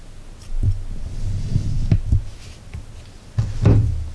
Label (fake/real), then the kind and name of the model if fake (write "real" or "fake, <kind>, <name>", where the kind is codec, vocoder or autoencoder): real